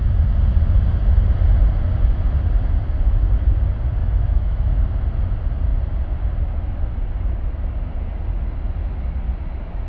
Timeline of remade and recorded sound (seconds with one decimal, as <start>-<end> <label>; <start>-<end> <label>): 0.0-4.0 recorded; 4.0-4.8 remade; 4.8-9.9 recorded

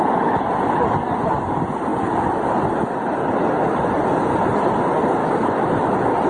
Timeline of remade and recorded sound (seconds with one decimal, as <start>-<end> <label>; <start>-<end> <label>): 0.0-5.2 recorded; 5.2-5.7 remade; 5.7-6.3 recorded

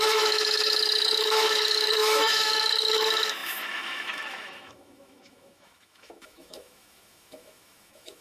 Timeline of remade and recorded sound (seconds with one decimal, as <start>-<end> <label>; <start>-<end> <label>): 0.0-8.2 remade